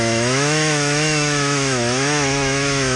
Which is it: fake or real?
fake